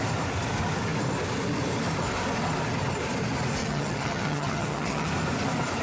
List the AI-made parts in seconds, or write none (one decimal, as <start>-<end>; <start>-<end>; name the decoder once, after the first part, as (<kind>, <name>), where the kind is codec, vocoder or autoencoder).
3.6-5.1 (vocoder, HiFi-GAN)